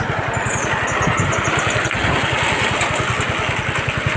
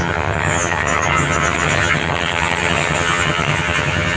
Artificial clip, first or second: second